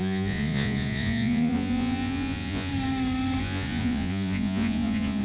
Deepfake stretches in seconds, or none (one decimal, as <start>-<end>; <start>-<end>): 0.0-2.7; 3.4-5.2